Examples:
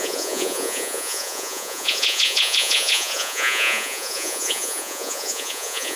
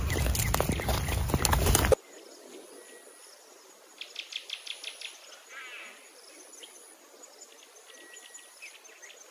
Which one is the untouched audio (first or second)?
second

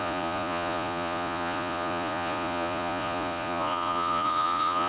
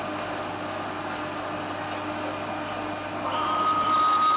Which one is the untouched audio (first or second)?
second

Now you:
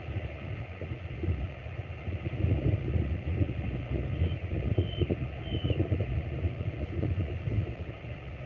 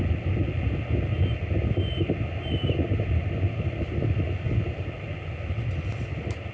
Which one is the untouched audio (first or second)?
second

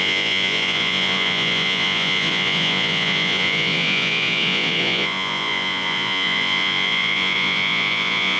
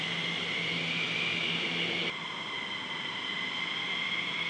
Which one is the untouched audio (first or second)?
second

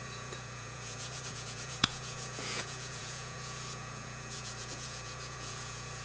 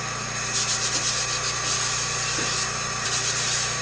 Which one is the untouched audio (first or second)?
second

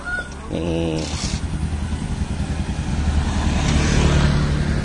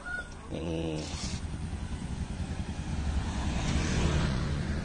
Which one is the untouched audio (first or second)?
first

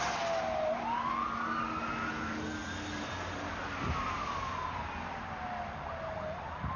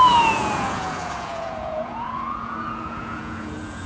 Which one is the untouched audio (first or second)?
first